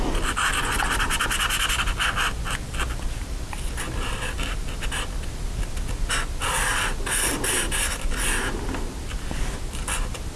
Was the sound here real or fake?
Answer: real